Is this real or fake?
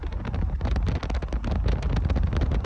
real